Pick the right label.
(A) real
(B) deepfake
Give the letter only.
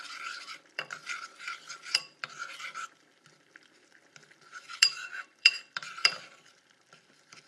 B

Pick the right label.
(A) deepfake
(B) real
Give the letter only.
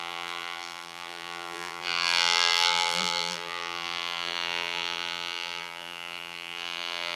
A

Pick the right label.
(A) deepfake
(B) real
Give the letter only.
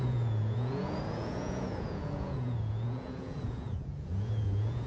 A